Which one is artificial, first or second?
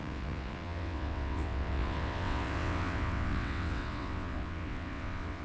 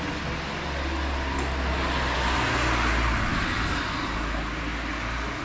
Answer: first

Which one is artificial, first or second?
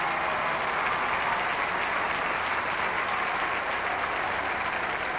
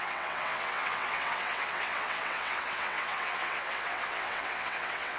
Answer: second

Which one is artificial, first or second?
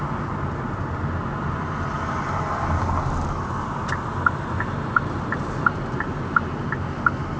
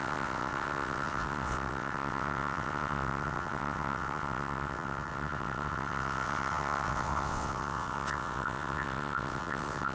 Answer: second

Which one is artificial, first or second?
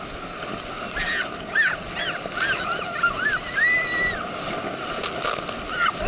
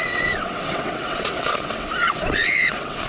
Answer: second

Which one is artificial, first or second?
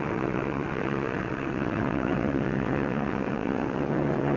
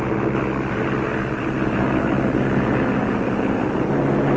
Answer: first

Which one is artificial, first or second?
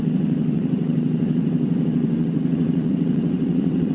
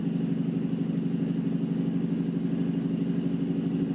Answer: first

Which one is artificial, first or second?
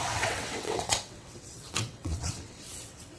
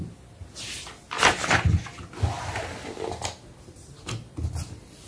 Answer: first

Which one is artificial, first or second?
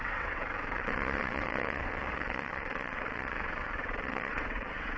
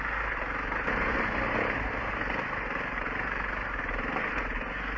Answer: first